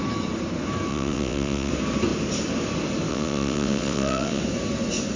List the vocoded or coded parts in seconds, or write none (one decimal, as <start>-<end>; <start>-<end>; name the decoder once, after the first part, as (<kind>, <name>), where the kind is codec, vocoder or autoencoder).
0.9-1.7 (vocoder, WaveNeXt); 3.1-4.4